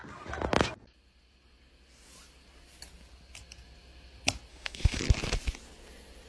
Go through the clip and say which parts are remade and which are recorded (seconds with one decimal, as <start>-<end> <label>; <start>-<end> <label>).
0.0-4.5 recorded; 4.5-5.0 remade; 5.0-6.3 recorded